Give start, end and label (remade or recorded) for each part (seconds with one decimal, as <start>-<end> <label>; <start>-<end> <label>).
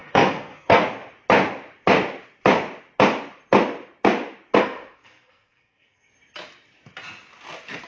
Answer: 0.0-0.8 remade; 0.8-4.6 recorded; 4.6-6.1 remade; 6.1-7.9 recorded